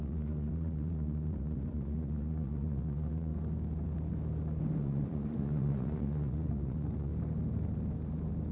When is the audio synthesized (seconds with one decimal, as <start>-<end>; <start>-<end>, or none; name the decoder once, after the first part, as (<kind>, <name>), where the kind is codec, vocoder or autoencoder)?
0.0-3.3 (vocoder, Vocos); 4.8-7.1